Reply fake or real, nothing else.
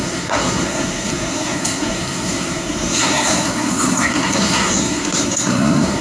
fake